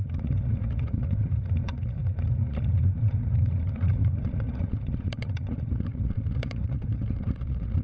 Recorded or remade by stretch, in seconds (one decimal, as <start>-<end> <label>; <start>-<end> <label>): 0.0-7.8 remade

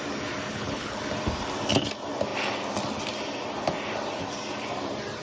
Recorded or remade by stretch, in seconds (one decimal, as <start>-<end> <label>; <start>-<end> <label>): 0.0-0.5 recorded; 0.5-1.0 remade; 1.0-5.2 recorded